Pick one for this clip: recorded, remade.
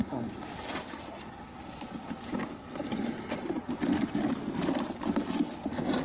recorded